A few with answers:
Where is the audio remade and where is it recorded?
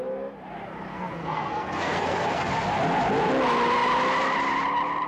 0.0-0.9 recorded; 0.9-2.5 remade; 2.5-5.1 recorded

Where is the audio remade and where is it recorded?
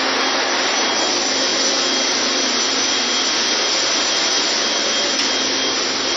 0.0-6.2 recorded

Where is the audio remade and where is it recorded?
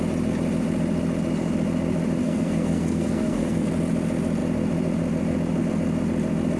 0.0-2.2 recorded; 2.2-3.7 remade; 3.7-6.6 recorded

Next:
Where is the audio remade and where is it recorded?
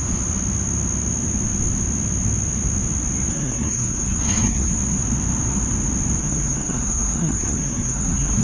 0.0-3.3 recorded; 3.3-4.7 remade; 4.7-6.2 recorded; 6.2-8.4 remade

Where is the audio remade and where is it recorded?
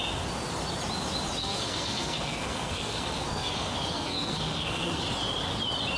0.0-1.4 recorded; 1.4-5.0 remade; 5.0-6.0 recorded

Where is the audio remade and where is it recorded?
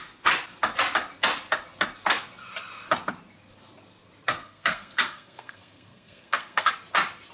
0.0-4.4 recorded; 4.4-6.7 remade; 6.7-7.3 recorded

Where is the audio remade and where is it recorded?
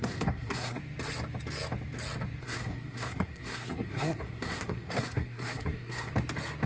0.0-0.8 remade; 0.8-2.4 recorded; 2.4-6.1 remade; 6.1-6.7 recorded